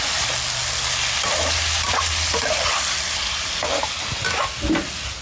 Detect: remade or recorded recorded